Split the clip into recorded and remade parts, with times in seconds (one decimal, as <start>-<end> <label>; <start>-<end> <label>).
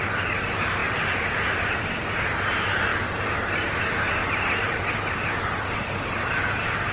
0.0-0.8 recorded; 0.8-1.7 remade; 1.7-6.9 recorded